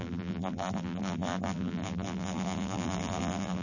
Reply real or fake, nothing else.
fake